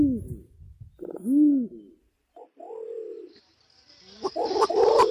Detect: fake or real real